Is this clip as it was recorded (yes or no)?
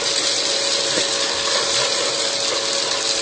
yes